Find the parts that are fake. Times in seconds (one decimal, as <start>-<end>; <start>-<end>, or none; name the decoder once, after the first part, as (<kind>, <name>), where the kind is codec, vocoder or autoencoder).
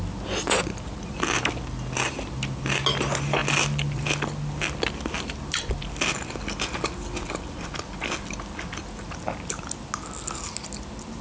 none